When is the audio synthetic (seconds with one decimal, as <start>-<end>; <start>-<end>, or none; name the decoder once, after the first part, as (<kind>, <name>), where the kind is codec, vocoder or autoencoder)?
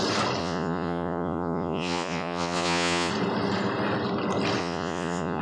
0.4-3.1 (vocoder, Vocos); 4.6-5.4